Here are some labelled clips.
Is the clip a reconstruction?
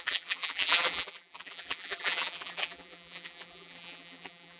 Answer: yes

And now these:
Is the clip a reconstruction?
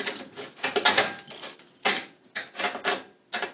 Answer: no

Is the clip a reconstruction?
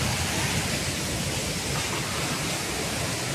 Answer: no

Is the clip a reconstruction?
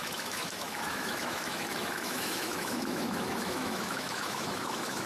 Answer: yes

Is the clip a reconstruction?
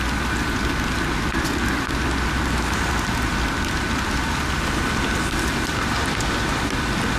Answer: no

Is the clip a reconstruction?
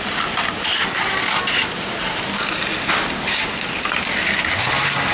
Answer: no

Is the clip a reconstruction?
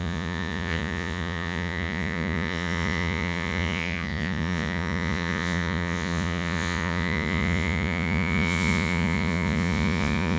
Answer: yes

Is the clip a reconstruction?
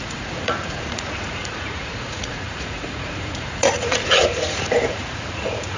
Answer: yes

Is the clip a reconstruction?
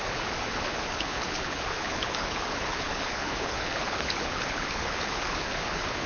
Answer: yes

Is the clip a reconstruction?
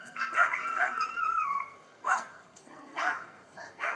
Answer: yes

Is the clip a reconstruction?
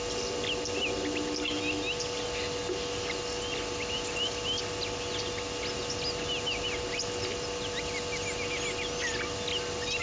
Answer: no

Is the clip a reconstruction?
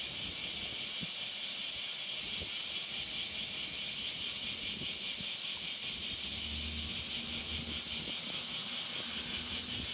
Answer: no